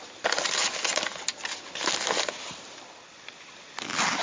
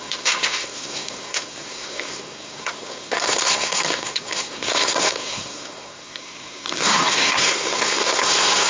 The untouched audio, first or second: first